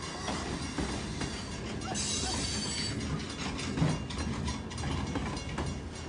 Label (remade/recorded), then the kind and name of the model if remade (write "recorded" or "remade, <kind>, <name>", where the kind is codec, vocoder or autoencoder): recorded